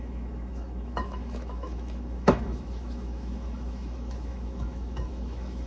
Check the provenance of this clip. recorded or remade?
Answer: remade